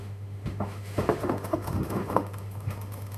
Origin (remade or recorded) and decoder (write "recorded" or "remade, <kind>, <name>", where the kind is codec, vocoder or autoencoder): remade, autoencoder, DAC-VAE